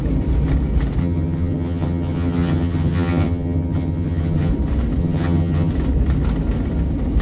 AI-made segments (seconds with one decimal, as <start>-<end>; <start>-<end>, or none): 1.0-4.5; 5.0-5.7